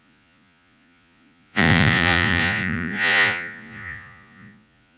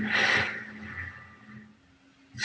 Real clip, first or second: second